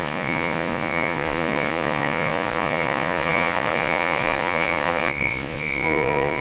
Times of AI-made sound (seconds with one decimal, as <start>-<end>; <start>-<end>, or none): 0.0-6.4